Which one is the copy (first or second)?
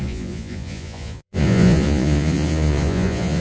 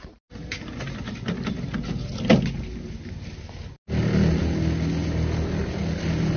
first